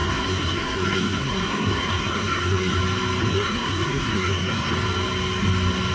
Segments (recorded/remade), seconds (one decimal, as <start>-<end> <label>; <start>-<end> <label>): 0.0-2.8 remade; 2.8-3.3 recorded; 3.3-4.7 remade; 4.7-5.9 recorded